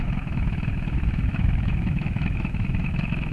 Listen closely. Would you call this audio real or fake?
fake